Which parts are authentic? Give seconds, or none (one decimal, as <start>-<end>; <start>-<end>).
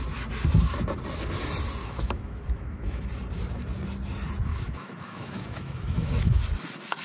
0.0-1.8; 3.1-4.5; 6.4-7.0